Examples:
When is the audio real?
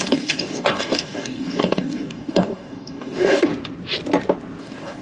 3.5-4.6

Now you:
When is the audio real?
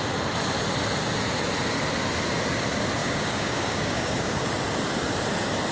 0.0-3.0; 4.5-5.7